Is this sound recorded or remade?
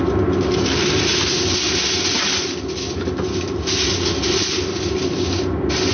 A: recorded